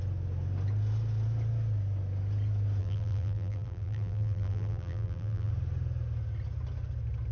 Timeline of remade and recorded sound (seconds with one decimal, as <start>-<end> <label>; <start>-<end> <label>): 0.0-2.8 recorded; 2.8-5.5 remade; 5.5-7.3 recorded